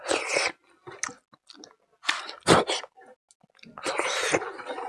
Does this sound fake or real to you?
real